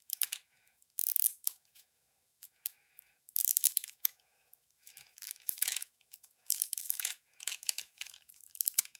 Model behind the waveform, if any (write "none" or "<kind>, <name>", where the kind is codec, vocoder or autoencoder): autoencoder, DAC-VAE